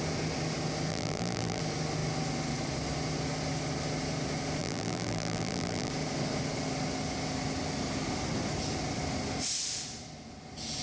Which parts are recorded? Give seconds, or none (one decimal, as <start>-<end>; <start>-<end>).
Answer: 0.0-0.9; 1.6-4.6; 5.9-10.8